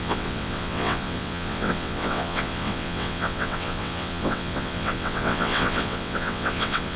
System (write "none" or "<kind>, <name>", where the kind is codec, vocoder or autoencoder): vocoder, WaveNeXt